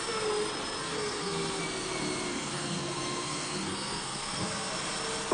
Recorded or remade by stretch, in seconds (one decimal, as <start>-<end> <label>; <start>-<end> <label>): 0.0-0.8 recorded; 0.8-1.6 remade; 1.6-2.3 recorded; 2.3-4.7 remade; 4.7-5.3 recorded